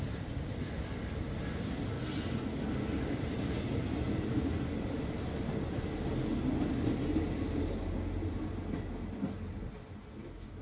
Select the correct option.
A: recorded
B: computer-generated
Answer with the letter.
A